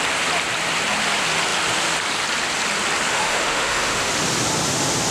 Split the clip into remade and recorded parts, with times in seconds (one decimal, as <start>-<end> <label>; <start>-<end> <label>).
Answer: 0.0-3.1 recorded; 3.1-4.1 remade; 4.1-5.1 recorded